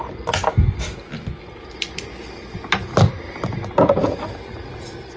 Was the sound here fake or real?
real